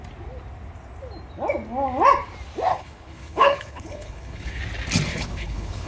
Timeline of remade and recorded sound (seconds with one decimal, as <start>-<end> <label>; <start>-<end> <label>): 0.0-2.7 recorded; 2.7-4.6 remade; 4.6-5.1 recorded; 5.1-5.9 remade